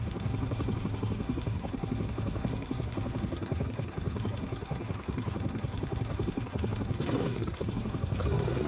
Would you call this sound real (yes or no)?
no